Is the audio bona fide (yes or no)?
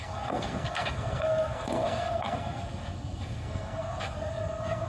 no